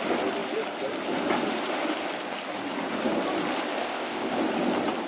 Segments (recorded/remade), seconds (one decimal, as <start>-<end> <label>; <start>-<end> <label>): 0.0-3.8 recorded; 3.8-4.4 remade; 4.4-5.1 recorded